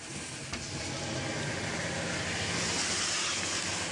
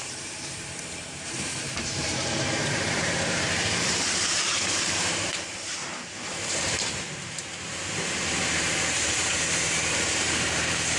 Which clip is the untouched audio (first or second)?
first